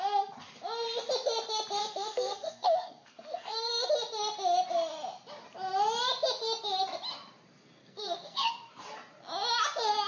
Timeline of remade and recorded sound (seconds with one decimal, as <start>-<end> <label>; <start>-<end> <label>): 0.0-1.8 recorded; 1.8-3.9 remade; 3.9-7.8 recorded; 7.8-8.5 remade; 8.5-10.1 recorded